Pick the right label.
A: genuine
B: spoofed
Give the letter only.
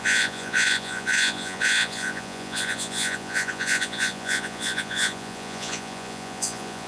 B